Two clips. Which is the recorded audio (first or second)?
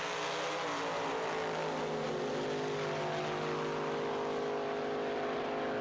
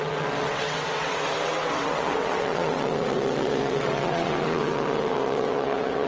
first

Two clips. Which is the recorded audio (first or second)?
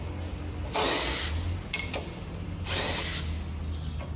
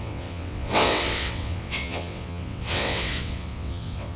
first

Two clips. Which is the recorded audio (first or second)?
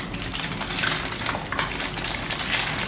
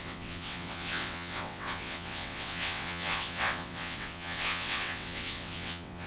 first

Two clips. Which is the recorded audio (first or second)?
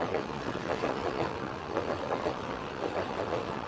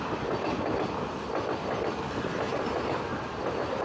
second